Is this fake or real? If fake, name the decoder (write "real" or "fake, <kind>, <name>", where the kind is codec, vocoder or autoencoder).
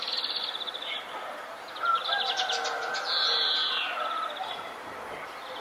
real